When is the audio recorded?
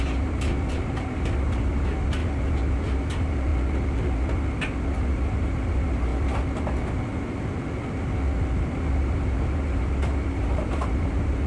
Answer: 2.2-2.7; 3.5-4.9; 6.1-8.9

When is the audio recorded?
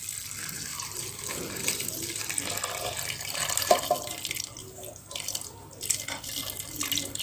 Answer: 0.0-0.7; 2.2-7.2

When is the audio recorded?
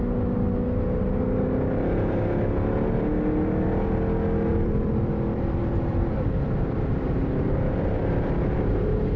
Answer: 0.0-4.5; 8.0-9.2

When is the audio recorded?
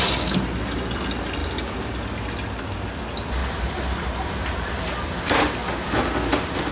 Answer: 0.0-3.4; 4.9-6.7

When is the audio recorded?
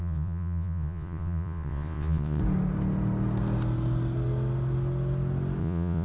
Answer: 2.4-5.6